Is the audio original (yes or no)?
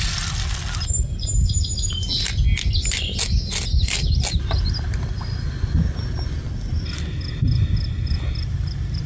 yes